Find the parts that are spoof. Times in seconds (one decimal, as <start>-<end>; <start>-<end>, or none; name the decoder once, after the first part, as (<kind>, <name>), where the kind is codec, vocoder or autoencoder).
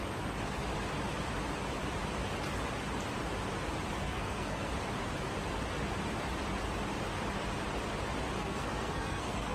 4.0-4.7 (codec, SNAC); 8.4-9.5